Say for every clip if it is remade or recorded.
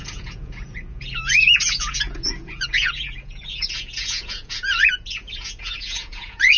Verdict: remade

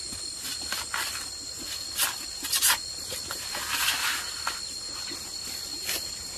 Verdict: recorded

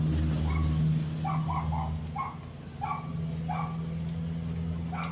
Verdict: recorded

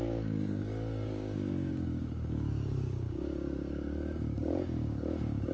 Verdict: remade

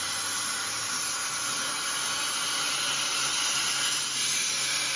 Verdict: recorded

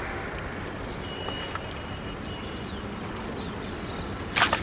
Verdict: recorded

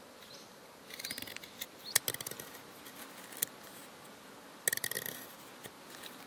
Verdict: recorded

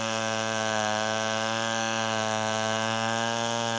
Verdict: remade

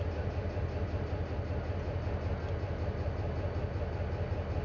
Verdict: recorded